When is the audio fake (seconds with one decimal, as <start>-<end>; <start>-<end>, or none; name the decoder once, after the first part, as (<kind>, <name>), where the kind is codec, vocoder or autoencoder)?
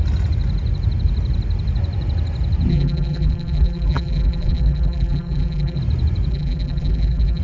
2.7-5.8 (vocoder, BigVGAN v2); 6.3-7.4